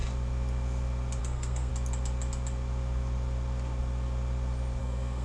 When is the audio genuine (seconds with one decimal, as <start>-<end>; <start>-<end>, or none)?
0.0-1.2; 1.7-4.8